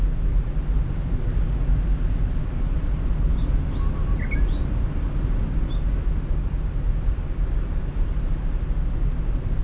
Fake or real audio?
real